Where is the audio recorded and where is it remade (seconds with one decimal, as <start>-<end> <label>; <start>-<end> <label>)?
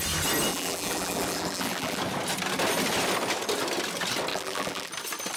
0.0-0.5 recorded; 0.5-2.0 remade; 2.0-4.3 recorded; 4.3-4.9 remade; 4.9-5.4 recorded